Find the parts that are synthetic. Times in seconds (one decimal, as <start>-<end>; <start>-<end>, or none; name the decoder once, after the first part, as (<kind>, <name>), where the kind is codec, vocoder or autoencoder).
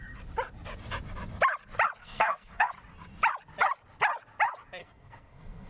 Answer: 2.0-2.7 (codec, SNAC); 4.8-5.7